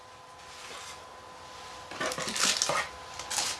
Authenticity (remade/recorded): recorded